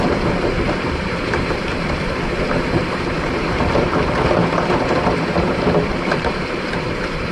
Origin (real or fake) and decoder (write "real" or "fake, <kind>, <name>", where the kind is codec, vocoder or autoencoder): fake, vocoder, BigVGAN v2